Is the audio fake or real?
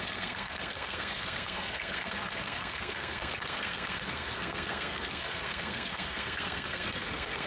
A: fake